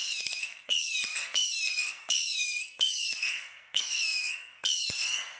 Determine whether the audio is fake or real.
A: fake